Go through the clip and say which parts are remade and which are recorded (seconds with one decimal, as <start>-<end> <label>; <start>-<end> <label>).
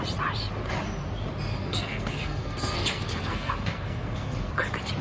0.0-1.5 recorded; 1.5-4.5 remade; 4.5-5.0 recorded